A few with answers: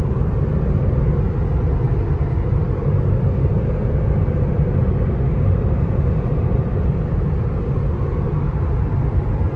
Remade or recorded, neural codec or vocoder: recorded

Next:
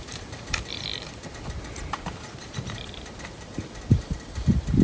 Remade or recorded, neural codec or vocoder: recorded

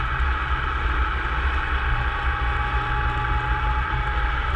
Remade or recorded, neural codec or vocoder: recorded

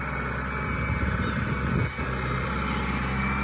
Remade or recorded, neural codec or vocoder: recorded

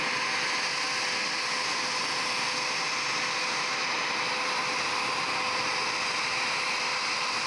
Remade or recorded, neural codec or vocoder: recorded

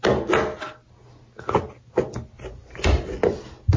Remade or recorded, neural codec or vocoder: recorded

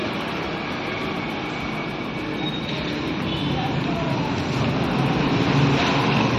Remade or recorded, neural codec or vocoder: recorded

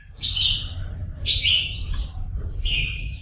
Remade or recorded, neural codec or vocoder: remade, vocoder, BigVGAN v2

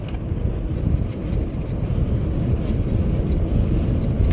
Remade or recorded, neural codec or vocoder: recorded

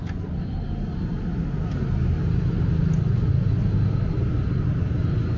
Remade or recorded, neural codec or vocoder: recorded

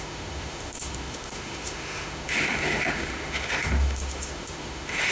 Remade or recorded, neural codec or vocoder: remade, autoencoder, DAC-VAE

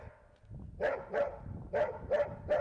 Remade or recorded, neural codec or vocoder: recorded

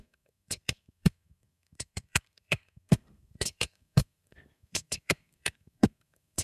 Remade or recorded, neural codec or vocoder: remade, codec, SNAC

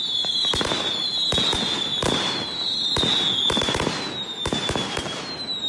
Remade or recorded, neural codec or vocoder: recorded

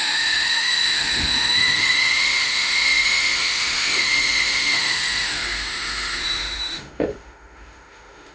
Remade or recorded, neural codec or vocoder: remade, autoencoder, DAC-VAE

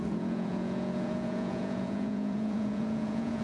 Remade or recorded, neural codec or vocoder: remade, vocoder, Vocos